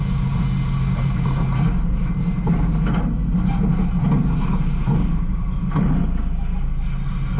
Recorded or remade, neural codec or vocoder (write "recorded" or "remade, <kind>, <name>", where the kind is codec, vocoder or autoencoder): recorded